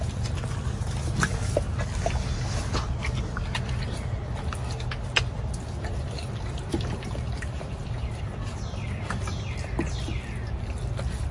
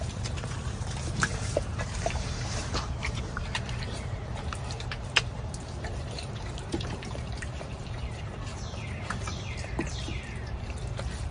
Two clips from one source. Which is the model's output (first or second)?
second